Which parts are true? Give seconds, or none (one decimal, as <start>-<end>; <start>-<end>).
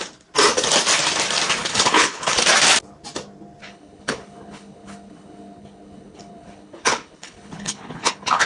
0.0-1.6; 2.4-3.6